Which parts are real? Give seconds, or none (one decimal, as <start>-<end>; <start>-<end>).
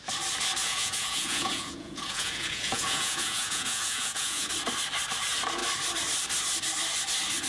0.0-0.6; 4.5-7.5